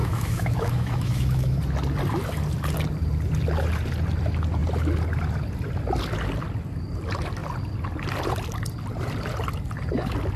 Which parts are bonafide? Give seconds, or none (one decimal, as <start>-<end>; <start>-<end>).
1.6-10.4